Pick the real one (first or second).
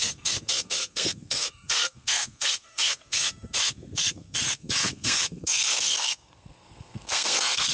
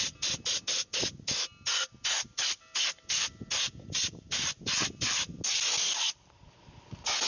second